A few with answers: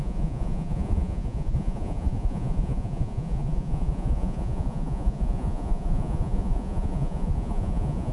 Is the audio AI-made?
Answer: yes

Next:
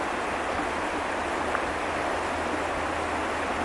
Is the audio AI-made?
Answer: no